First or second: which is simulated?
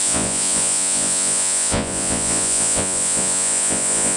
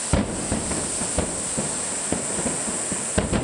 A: first